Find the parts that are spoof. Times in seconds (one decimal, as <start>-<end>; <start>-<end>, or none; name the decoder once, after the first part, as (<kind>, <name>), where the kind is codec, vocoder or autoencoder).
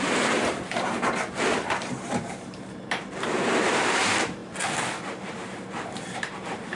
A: 0.0-4.4 (vocoder, BigVGAN v2); 5.1-6.8